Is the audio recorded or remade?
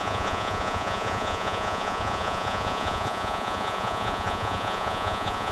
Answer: remade